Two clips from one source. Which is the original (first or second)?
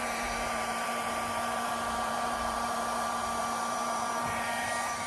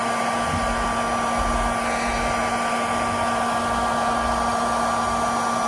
second